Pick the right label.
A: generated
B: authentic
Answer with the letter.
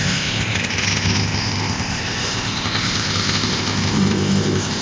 A